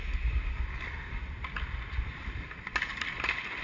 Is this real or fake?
real